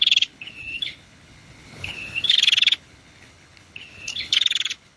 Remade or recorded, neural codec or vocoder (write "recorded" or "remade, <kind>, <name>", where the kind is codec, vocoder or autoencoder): remade, codec, HILCodec